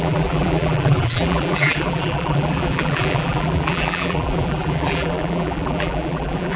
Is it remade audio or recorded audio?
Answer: remade